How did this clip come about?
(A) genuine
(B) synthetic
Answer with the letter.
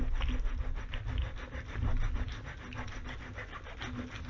A